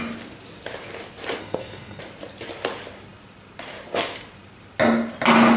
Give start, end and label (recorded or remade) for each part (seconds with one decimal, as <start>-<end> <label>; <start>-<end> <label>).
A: 0.0-1.4 recorded; 1.4-2.0 remade; 2.0-5.6 recorded